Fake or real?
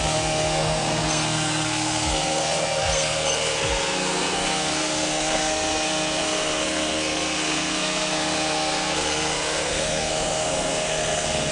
fake